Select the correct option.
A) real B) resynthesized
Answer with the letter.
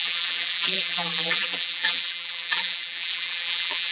B